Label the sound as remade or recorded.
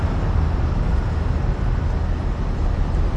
recorded